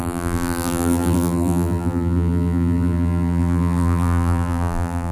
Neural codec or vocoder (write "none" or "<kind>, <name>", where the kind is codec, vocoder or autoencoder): vocoder, BigVGAN v2